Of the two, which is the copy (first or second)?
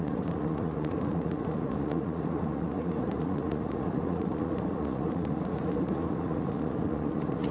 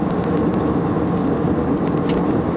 first